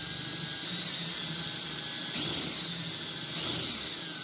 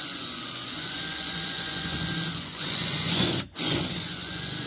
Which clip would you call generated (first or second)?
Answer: second